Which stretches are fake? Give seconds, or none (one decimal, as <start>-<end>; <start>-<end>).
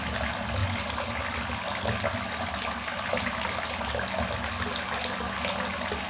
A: none